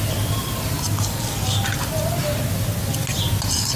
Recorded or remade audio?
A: recorded